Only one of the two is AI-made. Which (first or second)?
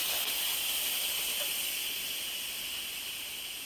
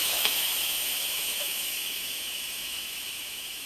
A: second